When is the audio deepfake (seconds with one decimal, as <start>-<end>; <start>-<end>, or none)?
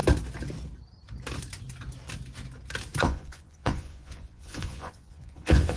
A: 3.0-5.8